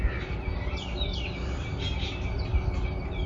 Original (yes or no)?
yes